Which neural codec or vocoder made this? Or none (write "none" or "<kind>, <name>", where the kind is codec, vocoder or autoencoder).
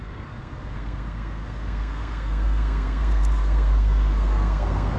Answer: codec, SNAC